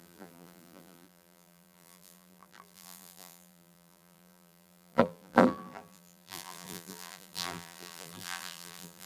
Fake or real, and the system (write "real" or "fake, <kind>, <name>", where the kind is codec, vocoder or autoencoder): fake, vocoder, BigVGAN v2